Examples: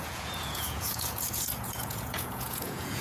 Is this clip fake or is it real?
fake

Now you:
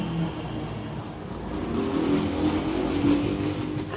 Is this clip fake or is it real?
real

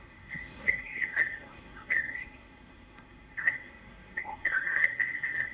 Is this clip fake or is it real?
fake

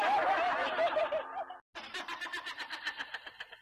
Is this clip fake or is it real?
real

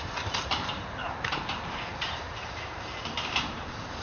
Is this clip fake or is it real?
fake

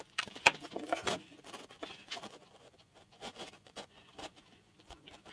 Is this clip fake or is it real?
fake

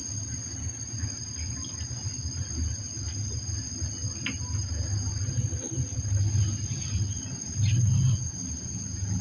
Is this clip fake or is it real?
real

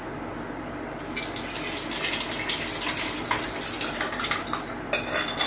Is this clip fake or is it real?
real